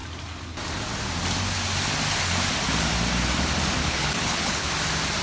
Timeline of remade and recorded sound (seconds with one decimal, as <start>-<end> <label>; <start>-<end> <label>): 0.0-3.8 recorded; 3.8-4.7 remade; 4.7-5.2 recorded